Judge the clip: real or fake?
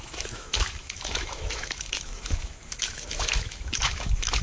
fake